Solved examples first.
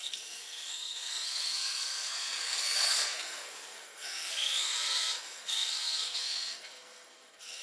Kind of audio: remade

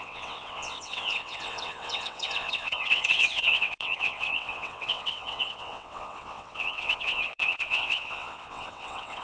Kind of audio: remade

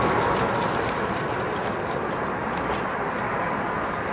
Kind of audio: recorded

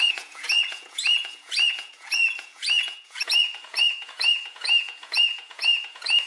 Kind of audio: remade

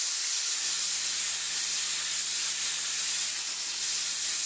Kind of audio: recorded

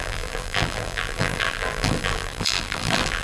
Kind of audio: remade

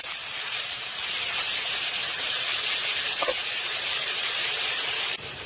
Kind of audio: remade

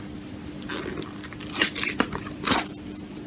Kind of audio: recorded